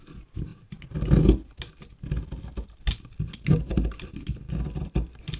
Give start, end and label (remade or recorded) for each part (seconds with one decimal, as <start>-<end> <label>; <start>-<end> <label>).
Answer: 0.0-5.4 recorded